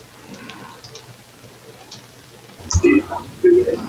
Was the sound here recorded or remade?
recorded